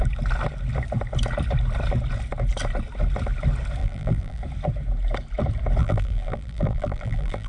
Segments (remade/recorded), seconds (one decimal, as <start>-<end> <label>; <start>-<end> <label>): 0.0-3.8 recorded; 3.8-4.4 remade; 4.4-5.8 recorded; 5.8-7.5 remade